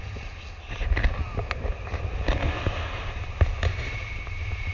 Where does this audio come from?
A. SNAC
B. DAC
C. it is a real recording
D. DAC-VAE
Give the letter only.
C